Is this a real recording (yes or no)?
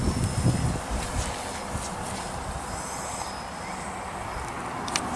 no